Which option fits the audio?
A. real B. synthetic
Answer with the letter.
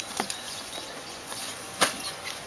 B